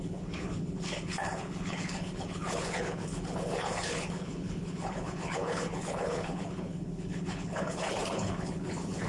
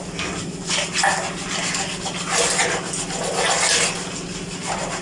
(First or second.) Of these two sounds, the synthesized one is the first